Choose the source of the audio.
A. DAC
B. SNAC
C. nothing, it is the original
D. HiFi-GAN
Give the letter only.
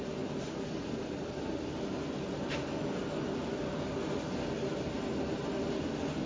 C